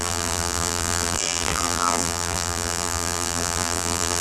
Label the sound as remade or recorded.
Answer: remade